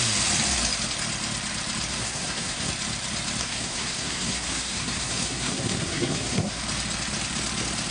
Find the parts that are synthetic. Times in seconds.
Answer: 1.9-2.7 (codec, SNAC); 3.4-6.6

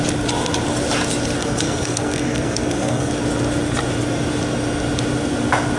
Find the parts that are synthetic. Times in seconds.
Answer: 1.4-3.1 (codec, SNAC)

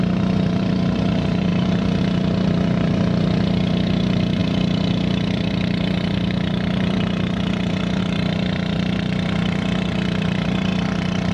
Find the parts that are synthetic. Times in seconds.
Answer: 0.0-11.3 (vocoder, BigVGAN v2)

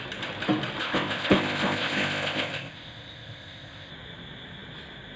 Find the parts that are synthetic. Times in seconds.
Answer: 0.8-3.9 (codec, ZipCodec)

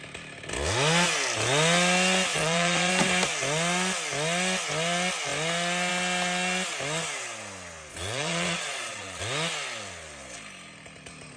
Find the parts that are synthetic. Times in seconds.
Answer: 2.3-2.9 (vocoder, Vocos); 7.9-9.2